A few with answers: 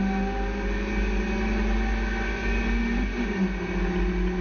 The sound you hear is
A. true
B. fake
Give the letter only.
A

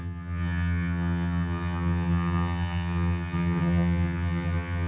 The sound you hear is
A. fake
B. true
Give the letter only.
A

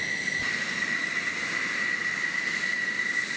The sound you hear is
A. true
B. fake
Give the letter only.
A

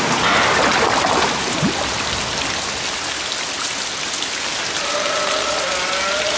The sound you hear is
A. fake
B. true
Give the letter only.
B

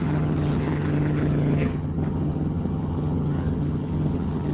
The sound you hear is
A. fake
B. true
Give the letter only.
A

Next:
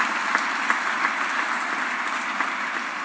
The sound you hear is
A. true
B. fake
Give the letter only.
A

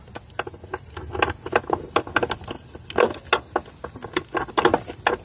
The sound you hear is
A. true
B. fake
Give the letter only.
A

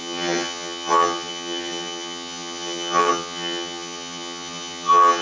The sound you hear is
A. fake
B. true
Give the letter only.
A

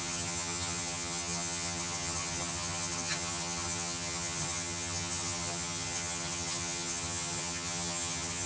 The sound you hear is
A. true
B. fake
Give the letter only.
B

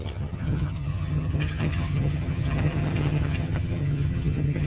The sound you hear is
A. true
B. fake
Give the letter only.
B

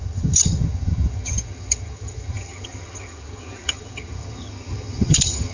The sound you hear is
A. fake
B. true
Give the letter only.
A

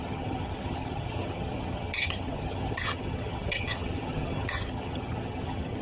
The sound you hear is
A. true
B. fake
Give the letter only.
B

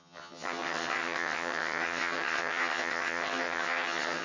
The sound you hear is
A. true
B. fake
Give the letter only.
B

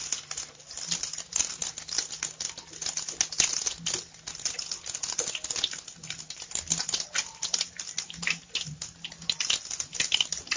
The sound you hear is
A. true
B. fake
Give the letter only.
A